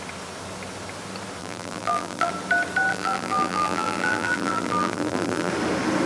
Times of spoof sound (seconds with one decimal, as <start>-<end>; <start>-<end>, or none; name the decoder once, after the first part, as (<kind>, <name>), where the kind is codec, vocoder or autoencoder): 1.4-2.3 (vocoder, BigVGAN v2); 2.9-5.5

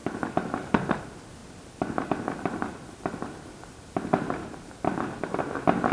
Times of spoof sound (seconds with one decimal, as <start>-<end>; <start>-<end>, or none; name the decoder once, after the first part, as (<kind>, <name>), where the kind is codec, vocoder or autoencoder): 0.0-0.7 (vocoder, BigVGAN v2); 1.4-4.9

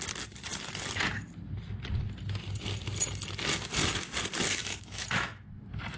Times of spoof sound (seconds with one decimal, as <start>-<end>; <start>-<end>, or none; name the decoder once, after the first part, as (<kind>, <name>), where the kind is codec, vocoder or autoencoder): 4.5-5.5 (autoencoder, DAC-VAE)

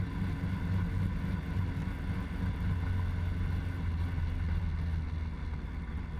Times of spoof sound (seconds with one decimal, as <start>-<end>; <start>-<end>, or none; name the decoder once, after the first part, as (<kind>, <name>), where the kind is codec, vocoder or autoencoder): none

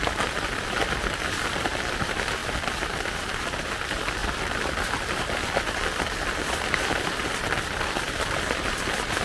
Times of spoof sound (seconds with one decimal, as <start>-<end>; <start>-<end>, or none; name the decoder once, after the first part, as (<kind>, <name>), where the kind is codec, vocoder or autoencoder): 2.4-3.1 (vocoder, BigVGAN v2); 4.2-7.3